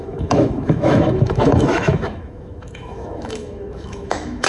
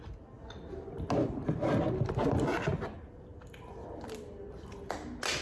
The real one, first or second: second